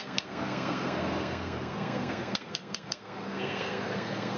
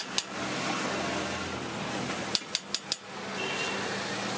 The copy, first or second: first